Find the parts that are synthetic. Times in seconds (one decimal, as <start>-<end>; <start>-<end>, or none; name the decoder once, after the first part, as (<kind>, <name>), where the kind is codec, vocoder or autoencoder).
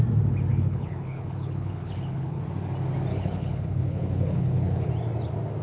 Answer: 0.5-2.4 (codec, HILCodec); 3.1-4.9